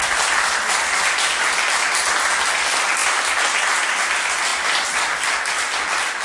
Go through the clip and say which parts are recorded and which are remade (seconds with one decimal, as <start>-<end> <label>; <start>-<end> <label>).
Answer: 0.0-6.2 recorded